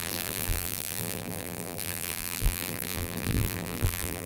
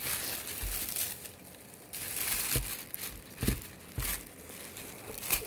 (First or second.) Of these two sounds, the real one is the second